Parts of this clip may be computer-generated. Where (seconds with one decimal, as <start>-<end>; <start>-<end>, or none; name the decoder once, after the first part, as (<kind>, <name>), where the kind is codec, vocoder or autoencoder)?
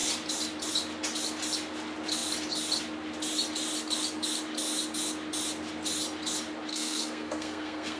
6.7-8.0 (codec, SNAC)